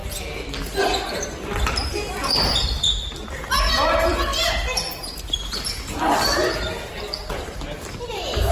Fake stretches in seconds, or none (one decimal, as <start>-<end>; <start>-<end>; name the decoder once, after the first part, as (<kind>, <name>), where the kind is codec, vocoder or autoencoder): none